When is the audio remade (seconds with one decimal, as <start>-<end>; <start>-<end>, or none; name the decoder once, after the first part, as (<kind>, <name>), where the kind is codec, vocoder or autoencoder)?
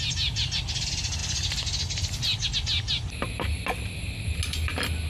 none